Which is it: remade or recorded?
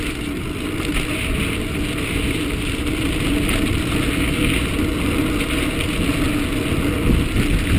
recorded